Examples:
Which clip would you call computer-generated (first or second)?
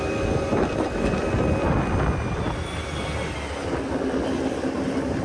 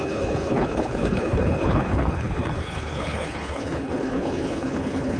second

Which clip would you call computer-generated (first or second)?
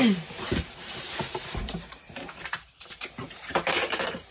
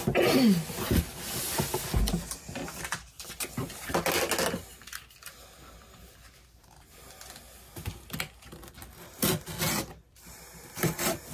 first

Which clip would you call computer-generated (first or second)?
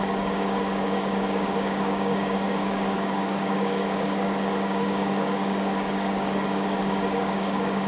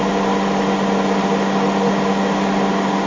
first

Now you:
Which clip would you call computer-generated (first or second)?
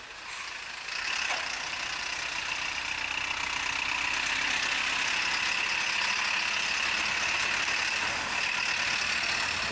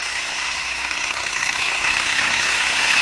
second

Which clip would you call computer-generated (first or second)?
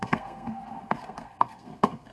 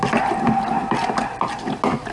first